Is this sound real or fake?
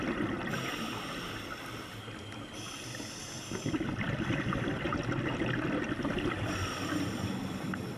real